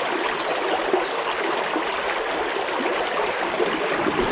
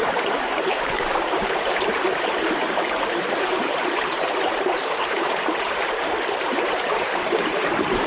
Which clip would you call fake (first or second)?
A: second